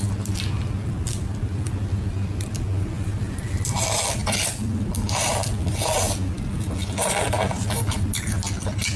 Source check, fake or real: fake